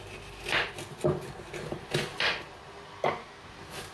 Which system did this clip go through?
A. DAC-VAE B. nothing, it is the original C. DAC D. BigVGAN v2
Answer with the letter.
B